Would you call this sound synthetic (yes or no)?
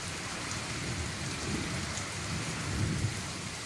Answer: no